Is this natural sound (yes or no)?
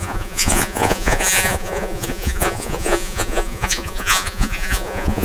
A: no